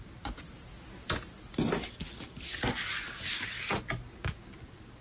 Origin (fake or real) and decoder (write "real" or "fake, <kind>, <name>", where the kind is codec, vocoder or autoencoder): real